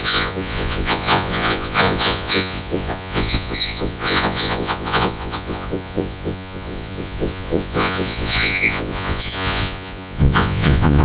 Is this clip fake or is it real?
fake